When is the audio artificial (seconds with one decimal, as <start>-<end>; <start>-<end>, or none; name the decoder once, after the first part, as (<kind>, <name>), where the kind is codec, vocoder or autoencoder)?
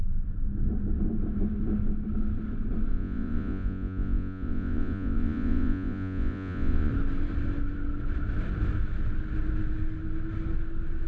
2.9-6.9 (vocoder, Vocos)